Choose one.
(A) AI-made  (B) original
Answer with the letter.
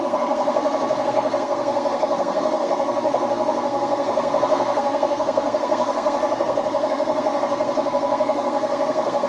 A